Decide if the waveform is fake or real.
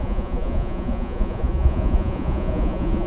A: fake